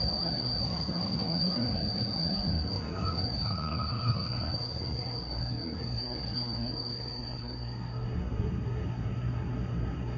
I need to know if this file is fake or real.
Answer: fake